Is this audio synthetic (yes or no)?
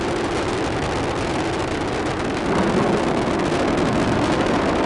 no